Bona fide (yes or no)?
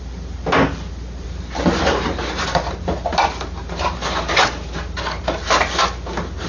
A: yes